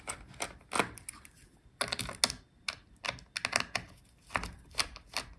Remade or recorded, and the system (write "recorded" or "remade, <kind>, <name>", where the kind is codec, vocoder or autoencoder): recorded